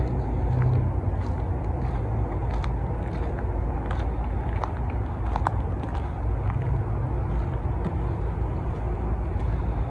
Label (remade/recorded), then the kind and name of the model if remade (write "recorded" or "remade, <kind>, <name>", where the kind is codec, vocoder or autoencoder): recorded